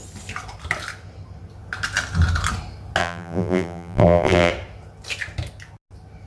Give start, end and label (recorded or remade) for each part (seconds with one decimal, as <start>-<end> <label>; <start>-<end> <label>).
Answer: 0.0-3.0 recorded; 3.0-4.5 remade; 4.5-6.3 recorded